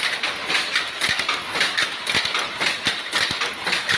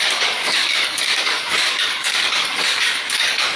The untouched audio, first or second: first